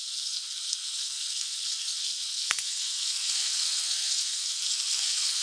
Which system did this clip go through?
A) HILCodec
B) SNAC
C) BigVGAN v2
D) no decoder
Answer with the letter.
B